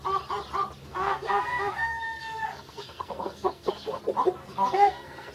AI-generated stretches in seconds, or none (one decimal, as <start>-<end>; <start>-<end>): 0.8-4.0; 4.4-5.3